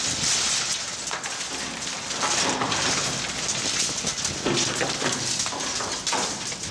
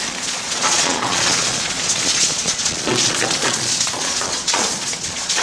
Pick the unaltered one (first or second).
first